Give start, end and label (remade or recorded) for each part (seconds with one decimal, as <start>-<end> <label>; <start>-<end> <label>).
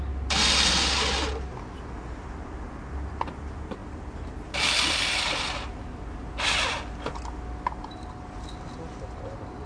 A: 0.0-9.7 recorded